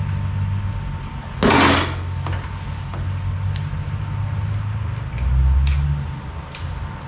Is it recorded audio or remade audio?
recorded